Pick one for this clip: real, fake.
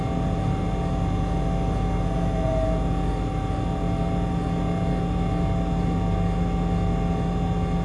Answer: real